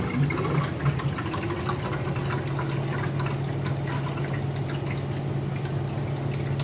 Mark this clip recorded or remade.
recorded